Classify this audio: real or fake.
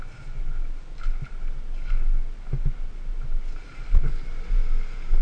real